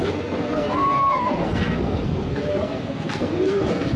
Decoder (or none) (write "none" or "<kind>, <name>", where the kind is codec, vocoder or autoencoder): codec, SNAC